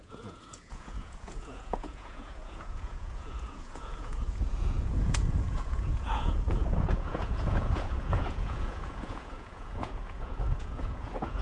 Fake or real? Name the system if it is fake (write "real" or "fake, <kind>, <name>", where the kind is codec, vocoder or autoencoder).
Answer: fake, vocoder, Vocos